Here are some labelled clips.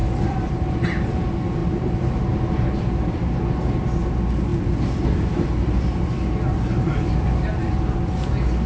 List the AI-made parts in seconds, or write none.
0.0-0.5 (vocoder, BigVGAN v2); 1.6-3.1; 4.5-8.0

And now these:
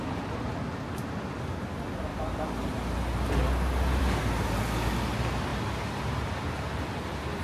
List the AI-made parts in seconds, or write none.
none

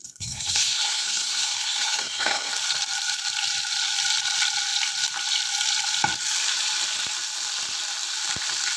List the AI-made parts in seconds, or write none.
0.0-2.5 (codec, SNAC)